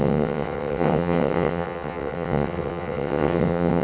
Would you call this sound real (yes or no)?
no